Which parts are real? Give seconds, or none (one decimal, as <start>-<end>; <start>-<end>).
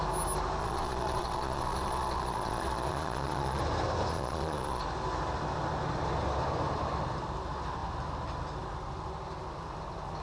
0.0-0.6; 3.6-4.1; 4.8-10.2